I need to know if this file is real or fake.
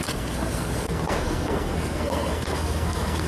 fake